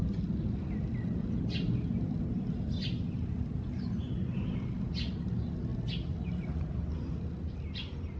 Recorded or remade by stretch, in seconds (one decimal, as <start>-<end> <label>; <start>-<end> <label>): 0.0-8.2 recorded